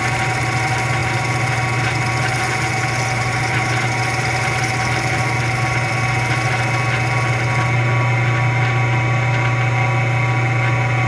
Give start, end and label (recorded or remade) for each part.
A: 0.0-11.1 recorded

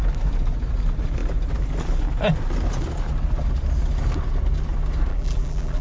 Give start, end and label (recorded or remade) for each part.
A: 0.0-5.1 recorded; 5.1-5.8 remade

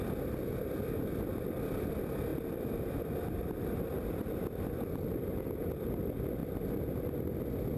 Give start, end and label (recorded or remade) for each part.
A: 0.0-2.3 recorded; 2.3-3.6 remade; 3.6-7.8 recorded